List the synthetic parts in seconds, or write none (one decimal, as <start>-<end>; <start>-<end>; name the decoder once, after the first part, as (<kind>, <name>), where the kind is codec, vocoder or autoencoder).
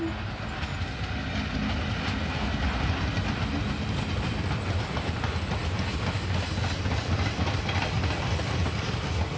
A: none